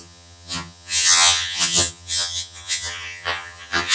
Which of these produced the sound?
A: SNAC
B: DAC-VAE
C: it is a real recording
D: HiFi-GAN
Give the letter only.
D